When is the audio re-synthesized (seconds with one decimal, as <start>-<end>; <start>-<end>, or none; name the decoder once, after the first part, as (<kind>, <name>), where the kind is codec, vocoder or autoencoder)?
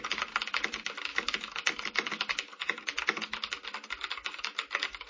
none